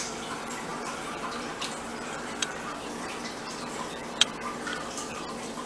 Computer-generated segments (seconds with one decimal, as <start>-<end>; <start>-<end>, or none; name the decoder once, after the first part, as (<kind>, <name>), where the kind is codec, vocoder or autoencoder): 0.0-5.7 (vocoder, BigVGAN v2)